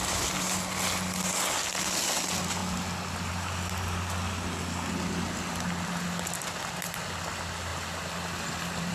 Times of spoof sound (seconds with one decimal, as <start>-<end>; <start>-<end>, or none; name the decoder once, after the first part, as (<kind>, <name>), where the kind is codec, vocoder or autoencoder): 7.7-8.9 (vocoder, BigVGAN v2)